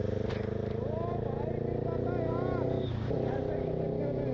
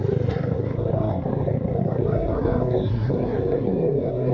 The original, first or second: first